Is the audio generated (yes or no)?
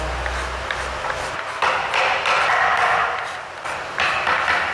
no